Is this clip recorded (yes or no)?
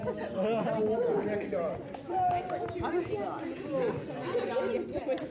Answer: yes